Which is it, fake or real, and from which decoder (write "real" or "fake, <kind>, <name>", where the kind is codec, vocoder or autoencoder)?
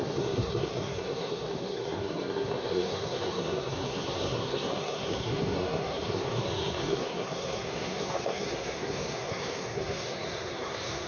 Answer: fake, codec, SNAC